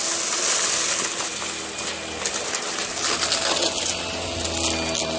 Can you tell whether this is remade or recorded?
recorded